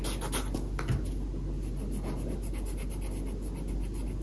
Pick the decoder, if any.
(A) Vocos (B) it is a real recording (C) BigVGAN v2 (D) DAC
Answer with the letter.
B